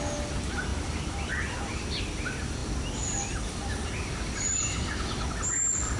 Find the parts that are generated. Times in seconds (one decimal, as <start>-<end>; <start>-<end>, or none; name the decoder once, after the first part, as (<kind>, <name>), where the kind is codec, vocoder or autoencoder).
none